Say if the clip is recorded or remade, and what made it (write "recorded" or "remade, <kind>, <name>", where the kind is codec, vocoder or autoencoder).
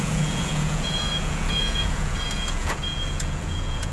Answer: remade, vocoder, Vocos